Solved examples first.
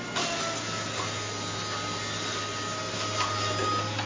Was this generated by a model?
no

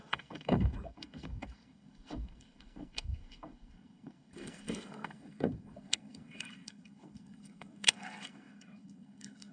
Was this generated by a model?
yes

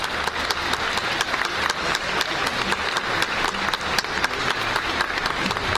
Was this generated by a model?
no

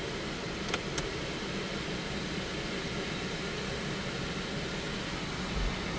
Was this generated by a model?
no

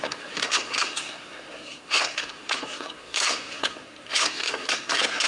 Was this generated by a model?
yes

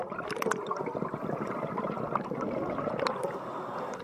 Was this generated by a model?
no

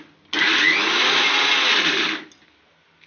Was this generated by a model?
no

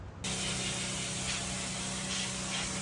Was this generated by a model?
no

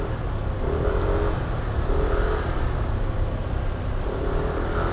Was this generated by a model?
no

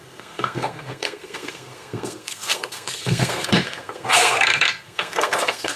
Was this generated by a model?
yes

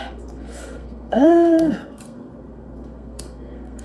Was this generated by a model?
yes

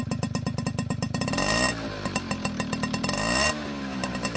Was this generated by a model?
no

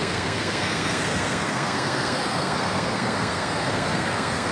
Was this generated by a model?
yes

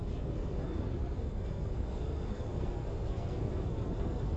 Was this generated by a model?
yes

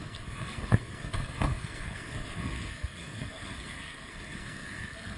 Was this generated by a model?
yes